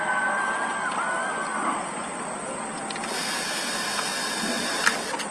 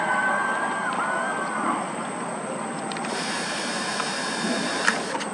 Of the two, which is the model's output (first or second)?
second